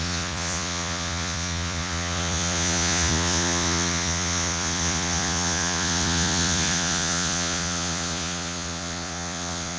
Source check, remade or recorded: remade